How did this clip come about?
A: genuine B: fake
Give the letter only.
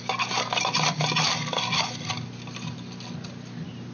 A